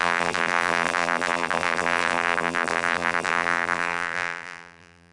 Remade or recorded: remade